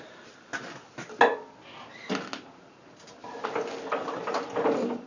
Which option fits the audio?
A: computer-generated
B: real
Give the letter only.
B